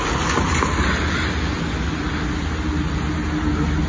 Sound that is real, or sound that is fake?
real